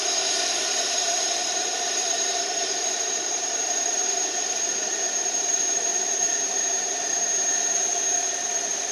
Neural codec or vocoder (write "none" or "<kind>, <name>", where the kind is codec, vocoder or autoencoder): vocoder, BigVGAN v2